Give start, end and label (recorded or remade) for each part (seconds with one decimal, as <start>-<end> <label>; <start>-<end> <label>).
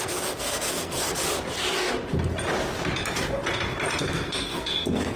0.0-1.1 remade; 1.1-4.0 recorded; 4.0-5.2 remade